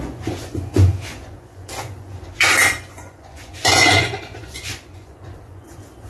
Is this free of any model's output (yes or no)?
no